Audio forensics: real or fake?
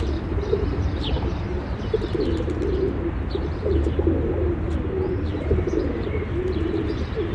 fake